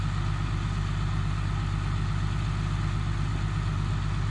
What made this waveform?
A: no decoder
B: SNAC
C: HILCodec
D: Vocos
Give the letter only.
A